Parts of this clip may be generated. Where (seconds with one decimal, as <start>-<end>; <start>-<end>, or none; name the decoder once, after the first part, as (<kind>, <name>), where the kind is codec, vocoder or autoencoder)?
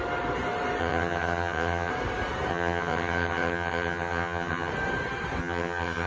0.8-1.9 (vocoder, HiFi-GAN); 2.5-4.7; 5.4-6.1